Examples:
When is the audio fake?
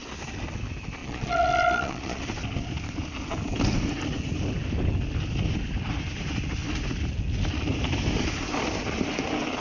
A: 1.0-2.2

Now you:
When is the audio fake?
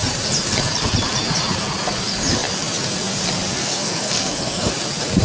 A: 3.6-4.7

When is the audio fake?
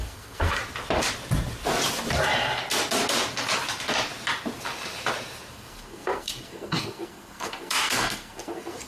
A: 0.0-0.6; 5.5-8.9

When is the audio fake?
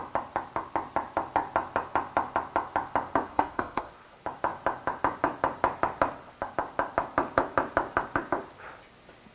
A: 3.3-3.9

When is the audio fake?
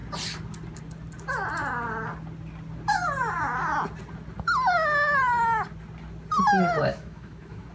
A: 6.9-7.7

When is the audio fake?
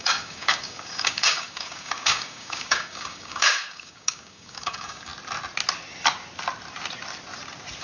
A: 0.0-5.1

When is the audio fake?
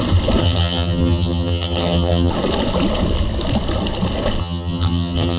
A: 0.4-2.3; 4.4-5.4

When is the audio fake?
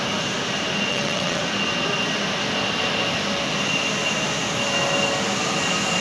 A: 0.9-1.4